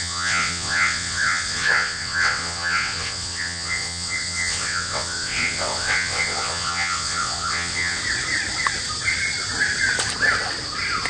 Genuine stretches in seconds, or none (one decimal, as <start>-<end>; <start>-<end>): 8.0-11.1